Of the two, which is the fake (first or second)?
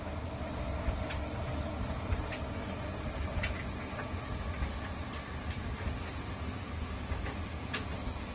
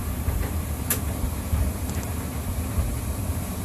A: second